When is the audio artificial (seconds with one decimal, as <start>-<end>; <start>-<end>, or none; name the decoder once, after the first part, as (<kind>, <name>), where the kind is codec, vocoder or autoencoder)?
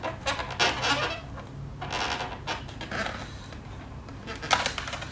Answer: none